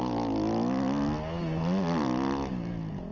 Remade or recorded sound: recorded